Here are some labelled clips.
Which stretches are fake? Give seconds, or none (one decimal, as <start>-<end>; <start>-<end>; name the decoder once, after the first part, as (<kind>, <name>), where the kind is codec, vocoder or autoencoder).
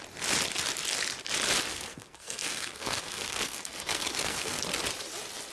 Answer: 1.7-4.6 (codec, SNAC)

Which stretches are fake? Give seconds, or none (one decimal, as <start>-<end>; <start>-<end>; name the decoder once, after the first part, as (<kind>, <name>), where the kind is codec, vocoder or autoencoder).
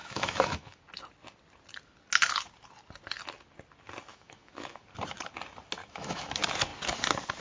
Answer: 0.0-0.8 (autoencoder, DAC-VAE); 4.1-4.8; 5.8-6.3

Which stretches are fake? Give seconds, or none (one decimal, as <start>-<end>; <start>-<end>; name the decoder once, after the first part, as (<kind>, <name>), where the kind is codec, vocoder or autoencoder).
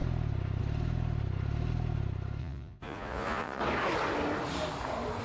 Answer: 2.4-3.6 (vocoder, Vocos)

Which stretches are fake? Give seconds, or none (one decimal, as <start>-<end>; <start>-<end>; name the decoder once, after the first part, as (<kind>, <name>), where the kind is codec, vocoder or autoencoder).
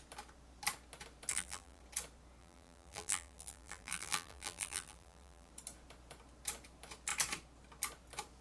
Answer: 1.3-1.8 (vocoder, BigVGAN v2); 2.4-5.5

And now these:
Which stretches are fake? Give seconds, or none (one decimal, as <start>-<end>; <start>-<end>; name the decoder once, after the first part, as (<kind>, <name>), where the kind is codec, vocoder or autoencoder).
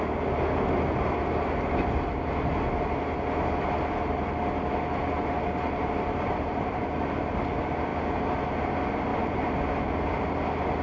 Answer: 5.0-7.4 (vocoder, BigVGAN v2); 9.1-9.6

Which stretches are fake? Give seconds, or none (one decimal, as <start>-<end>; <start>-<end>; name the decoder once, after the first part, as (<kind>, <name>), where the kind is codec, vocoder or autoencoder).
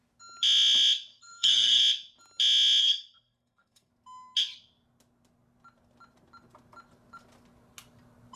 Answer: 1.1-1.8 (codec, SNAC); 2.8-3.9